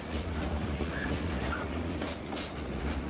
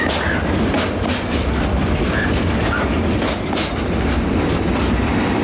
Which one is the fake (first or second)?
first